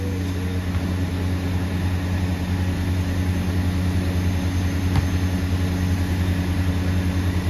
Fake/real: real